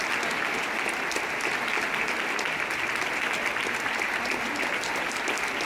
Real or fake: real